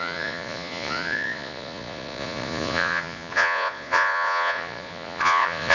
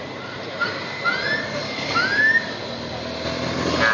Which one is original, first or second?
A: second